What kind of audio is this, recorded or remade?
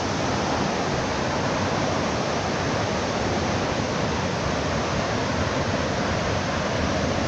recorded